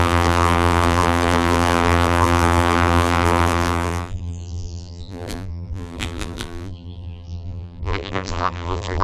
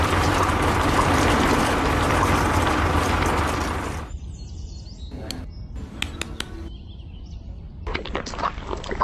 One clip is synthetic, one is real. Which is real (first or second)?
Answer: second